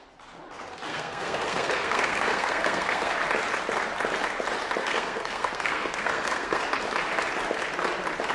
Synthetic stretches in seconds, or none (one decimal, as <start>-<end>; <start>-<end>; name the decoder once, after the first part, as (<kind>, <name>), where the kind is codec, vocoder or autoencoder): 0.9-3.1 (codec, SNAC); 4.8-6.6